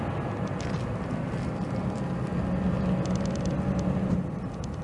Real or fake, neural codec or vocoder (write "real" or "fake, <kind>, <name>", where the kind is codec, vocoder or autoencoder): real